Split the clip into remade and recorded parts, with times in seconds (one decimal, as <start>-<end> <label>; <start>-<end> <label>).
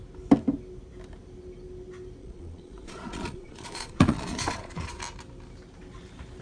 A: 0.0-2.2 recorded; 2.2-5.0 remade; 5.0-6.4 recorded